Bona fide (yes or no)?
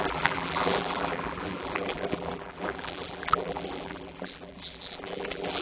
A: no